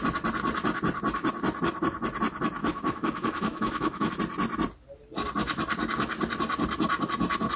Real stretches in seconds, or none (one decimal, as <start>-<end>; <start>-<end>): 0.0-2.6; 4.1-7.6